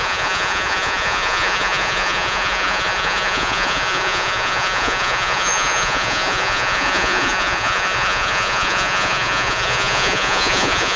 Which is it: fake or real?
fake